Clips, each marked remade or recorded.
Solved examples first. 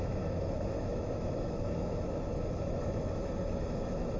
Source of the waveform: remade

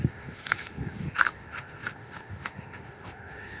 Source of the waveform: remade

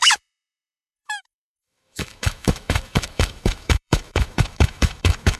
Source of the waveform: remade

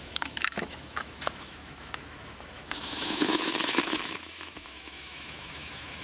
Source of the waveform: remade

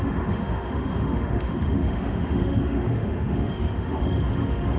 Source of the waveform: remade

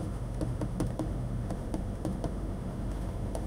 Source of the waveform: remade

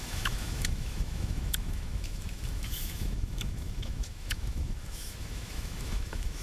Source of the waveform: remade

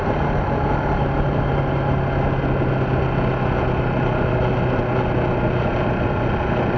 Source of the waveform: recorded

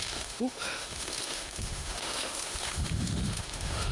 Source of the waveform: remade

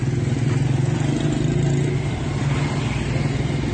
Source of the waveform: recorded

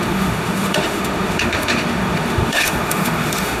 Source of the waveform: remade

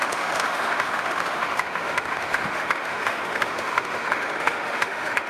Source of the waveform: remade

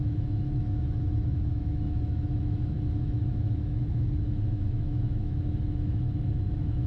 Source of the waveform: remade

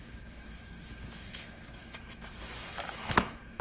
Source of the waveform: remade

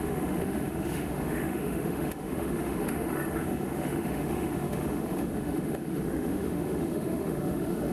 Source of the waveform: remade